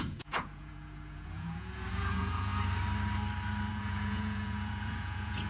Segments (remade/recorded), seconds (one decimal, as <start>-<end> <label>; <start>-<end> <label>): 0.0-2.5 remade; 2.5-3.7 recorded; 3.7-5.5 remade